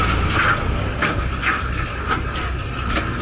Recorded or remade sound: recorded